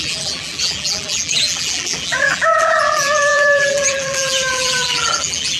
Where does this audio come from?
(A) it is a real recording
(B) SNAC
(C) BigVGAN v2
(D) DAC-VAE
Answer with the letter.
C